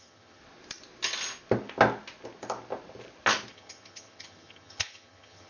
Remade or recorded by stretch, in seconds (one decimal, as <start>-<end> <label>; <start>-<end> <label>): 0.0-0.4 remade; 0.4-3.5 recorded; 3.5-5.5 remade